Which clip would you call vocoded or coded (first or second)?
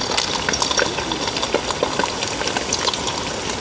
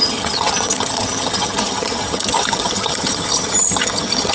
second